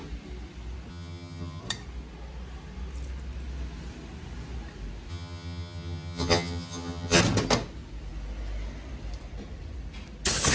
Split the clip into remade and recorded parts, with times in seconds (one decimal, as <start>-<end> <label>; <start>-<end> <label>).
0.0-0.9 recorded; 0.9-1.6 remade; 1.6-5.1 recorded; 5.1-7.2 remade; 7.2-10.5 recorded